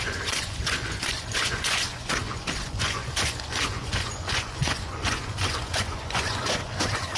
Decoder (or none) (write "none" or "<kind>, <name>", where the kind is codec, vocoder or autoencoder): vocoder, Vocos